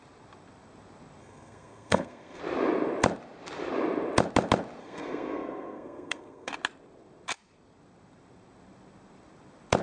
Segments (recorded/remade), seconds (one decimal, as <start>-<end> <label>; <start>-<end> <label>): 0.0-1.2 recorded; 1.2-2.4 remade; 2.4-4.8 recorded; 4.8-6.5 remade; 6.5-9.8 recorded